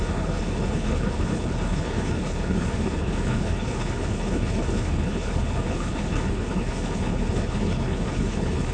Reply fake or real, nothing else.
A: fake